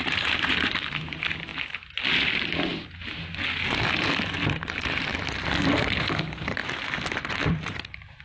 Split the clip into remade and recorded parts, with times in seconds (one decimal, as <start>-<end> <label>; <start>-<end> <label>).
0.0-1.5 remade; 1.5-2.1 recorded; 2.1-2.7 remade; 2.7-5.5 recorded; 5.5-6.6 remade; 6.6-7.3 recorded; 7.3-8.2 remade